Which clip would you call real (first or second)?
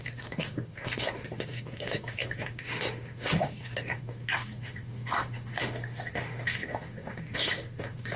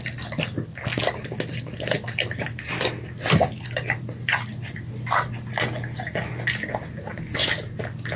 second